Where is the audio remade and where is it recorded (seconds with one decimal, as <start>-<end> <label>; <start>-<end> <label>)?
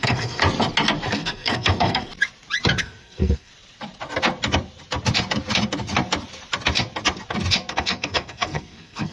0.0-0.4 remade; 0.4-1.1 recorded; 1.1-2.1 remade; 2.1-2.8 recorded; 2.8-3.5 remade; 3.5-7.7 recorded; 7.7-9.1 remade